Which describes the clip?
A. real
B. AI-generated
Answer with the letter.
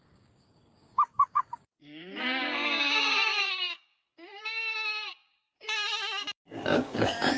B